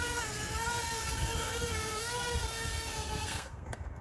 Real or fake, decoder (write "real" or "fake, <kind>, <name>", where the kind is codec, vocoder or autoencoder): fake, codec, SNAC